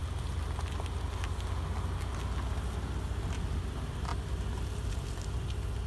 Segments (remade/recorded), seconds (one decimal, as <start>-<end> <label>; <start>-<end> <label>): 0.0-5.9 recorded